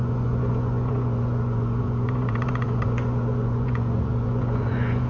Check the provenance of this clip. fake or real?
fake